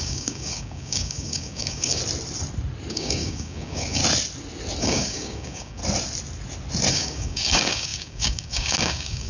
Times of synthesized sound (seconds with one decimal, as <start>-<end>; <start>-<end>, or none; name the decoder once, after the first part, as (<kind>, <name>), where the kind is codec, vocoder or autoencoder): 0.0-2.0 (codec, DAC); 2.9-4.0; 4.8-5.8; 6.9-9.3